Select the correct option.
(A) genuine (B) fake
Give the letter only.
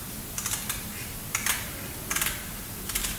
A